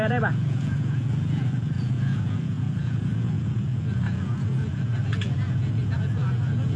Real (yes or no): no